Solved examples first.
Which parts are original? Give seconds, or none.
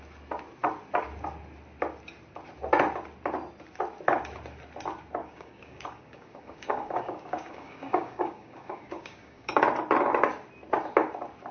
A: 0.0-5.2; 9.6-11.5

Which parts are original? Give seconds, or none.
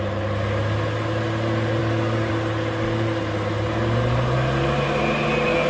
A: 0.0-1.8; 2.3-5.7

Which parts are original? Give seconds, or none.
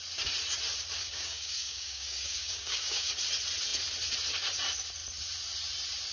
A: 0.0-1.0; 3.1-6.1